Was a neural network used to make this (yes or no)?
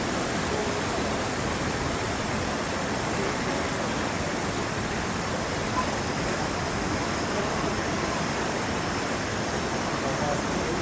no